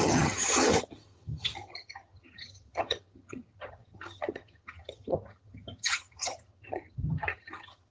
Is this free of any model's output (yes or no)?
no